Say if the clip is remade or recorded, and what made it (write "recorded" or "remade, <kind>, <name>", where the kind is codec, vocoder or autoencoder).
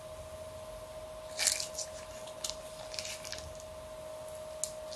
recorded